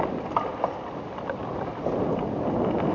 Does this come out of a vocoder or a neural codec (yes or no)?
no